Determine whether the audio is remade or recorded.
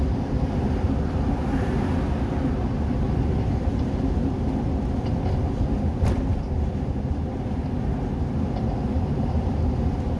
recorded